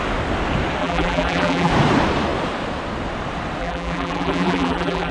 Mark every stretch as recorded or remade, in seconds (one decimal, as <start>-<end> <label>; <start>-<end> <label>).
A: 0.0-0.8 recorded; 0.8-1.7 remade; 1.7-3.6 recorded; 3.6-5.1 remade